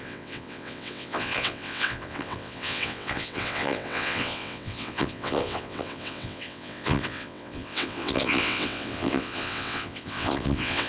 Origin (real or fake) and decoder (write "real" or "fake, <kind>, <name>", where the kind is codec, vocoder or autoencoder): fake, vocoder, WaveNeXt